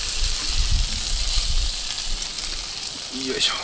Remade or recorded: recorded